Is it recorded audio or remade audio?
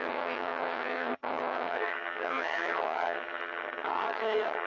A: remade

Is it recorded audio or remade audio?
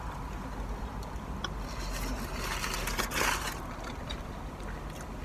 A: recorded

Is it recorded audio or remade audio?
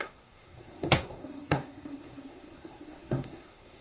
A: remade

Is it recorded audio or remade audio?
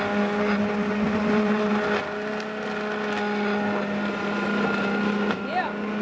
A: recorded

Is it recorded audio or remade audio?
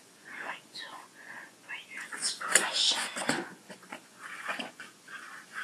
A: remade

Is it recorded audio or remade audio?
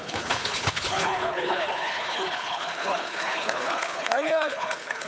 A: remade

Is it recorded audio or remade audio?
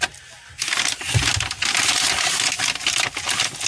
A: recorded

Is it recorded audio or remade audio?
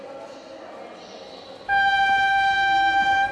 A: recorded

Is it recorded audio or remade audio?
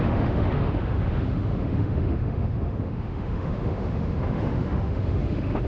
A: remade